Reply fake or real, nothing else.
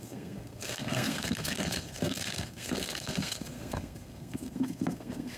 fake